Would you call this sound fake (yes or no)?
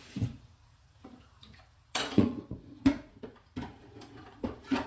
yes